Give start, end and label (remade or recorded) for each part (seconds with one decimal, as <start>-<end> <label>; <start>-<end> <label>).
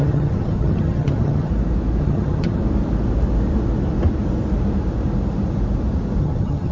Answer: 0.0-1.5 remade; 1.5-2.0 recorded; 2.0-2.6 remade; 2.6-6.2 recorded; 6.2-6.7 remade